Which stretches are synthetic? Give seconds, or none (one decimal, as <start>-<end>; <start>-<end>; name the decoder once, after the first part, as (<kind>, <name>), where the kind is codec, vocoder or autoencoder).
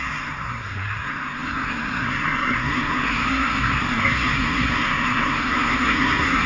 0.0-6.5 (codec, SNAC)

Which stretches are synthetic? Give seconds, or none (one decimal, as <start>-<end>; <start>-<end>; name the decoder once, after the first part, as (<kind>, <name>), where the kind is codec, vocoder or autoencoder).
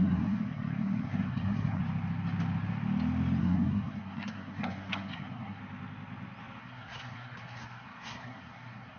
0.0-1.8 (codec, SNAC); 3.4-5.6; 6.6-9.0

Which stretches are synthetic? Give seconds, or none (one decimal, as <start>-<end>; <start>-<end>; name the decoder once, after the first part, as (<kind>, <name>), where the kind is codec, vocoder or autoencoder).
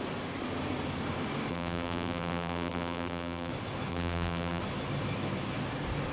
1.5-3.5 (vocoder, BigVGAN v2); 3.9-4.6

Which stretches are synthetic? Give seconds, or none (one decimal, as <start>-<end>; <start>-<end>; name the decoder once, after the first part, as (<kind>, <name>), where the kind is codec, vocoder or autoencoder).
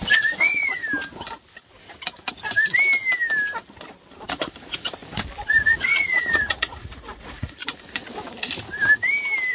0.0-0.8 (vocoder, Vocos); 5.5-7.6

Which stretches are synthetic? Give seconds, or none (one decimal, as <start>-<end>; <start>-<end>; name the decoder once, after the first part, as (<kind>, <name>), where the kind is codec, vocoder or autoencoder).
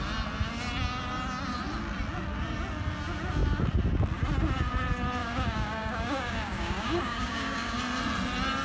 5.2-7.8 (codec, DAC)